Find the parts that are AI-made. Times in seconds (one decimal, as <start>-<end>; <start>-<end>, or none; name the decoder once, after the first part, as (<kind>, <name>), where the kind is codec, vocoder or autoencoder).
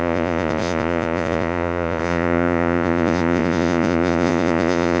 0.0-5.0 (vocoder, Vocos)